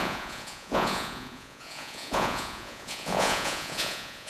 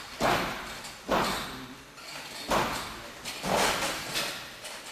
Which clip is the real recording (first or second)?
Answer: second